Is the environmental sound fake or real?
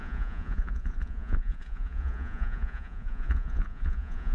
fake